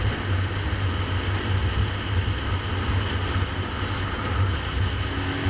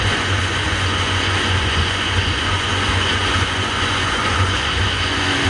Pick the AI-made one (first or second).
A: second